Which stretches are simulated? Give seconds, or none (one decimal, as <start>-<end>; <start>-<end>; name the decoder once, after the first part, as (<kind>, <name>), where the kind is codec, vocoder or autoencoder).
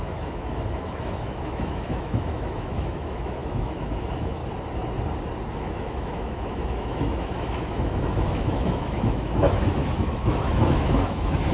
0.0-4.4 (autoencoder, DAC-VAE); 5.5-11.5